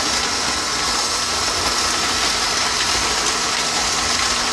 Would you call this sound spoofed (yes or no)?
no